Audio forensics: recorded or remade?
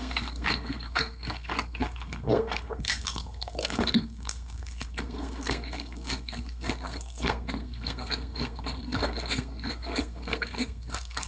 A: remade